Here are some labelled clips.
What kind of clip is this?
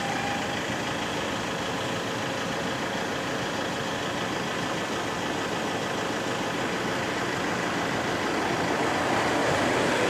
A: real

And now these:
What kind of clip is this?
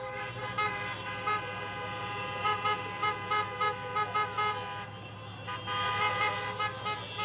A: real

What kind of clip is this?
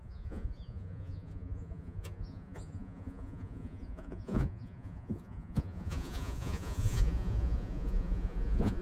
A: fake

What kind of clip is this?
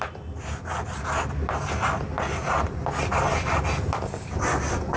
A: real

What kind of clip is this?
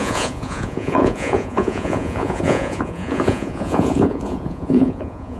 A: fake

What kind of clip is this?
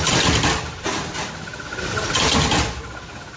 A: real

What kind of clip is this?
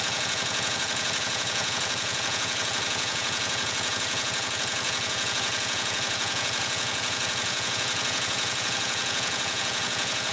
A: fake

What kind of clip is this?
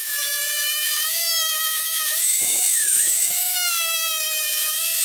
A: fake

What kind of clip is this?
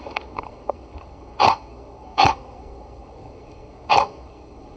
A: fake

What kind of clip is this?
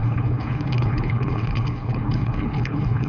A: fake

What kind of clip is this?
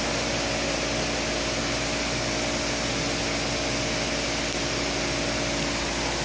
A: real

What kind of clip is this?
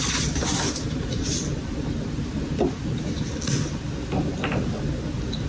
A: real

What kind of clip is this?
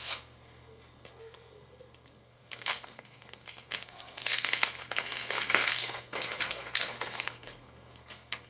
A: fake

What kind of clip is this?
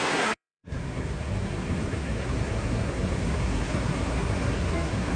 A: fake